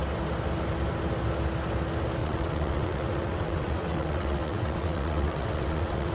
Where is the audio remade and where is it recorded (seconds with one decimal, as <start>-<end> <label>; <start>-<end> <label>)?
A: 0.0-2.2 recorded; 2.2-6.1 remade